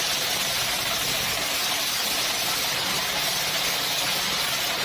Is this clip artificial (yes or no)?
no